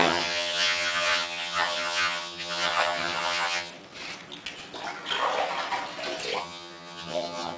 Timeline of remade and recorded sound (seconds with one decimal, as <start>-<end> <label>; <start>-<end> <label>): 0.0-3.7 remade; 3.7-6.4 recorded; 6.4-7.6 remade